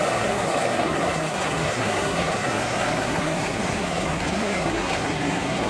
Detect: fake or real fake